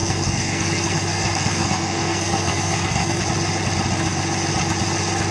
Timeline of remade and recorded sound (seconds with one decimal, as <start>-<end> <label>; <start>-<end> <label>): 0.0-3.2 remade; 3.2-5.3 recorded